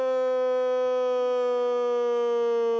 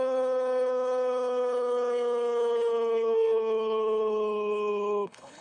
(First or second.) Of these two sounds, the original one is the first